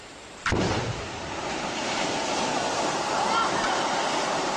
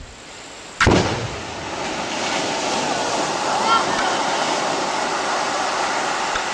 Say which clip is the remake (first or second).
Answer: first